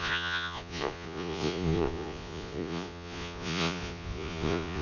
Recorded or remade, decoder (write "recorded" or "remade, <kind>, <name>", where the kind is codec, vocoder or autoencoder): remade, vocoder, Vocos